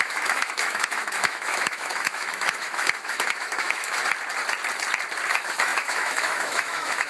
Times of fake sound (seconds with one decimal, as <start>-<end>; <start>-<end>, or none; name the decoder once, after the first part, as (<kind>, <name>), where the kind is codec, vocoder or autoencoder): 0.0-4.0 (autoencoder, DAC-VAE); 5.3-7.1